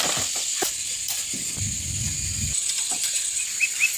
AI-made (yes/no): yes